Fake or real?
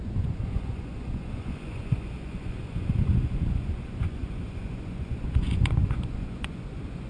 fake